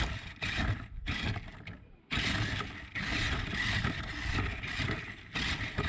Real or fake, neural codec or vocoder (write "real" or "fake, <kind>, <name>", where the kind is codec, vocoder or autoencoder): real